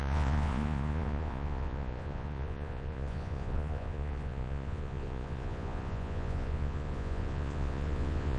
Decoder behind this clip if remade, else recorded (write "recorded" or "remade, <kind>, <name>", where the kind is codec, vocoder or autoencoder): remade, vocoder, Vocos